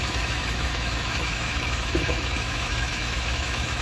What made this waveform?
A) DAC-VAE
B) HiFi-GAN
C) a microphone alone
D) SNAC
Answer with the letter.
A